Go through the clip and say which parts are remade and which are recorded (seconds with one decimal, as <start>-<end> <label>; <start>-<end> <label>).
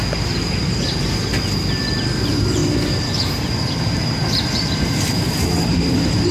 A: 0.0-0.6 recorded; 0.6-1.3 remade; 1.3-2.0 recorded; 2.0-6.3 remade